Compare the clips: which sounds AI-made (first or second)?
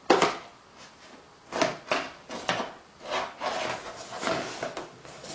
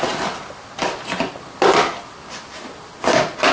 second